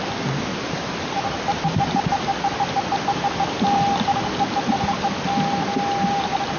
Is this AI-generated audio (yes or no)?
yes